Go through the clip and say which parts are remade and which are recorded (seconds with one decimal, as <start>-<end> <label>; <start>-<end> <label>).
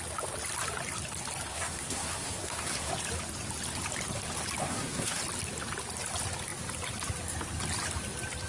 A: 0.0-1.5 recorded; 1.5-2.9 remade; 2.9-4.6 recorded; 4.6-5.2 remade; 5.2-8.5 recorded